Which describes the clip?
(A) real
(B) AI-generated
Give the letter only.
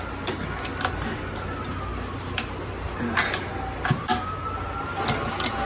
A